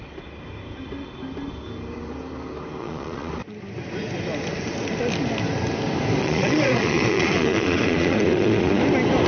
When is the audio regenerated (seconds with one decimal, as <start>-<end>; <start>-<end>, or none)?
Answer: 2.8-3.3; 6.2-8.8